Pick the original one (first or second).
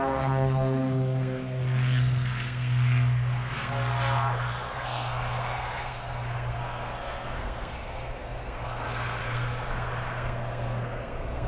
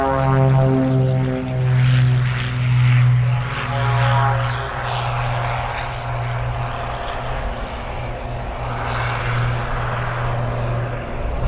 second